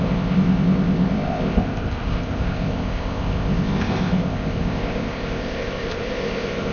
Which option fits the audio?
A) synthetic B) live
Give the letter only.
A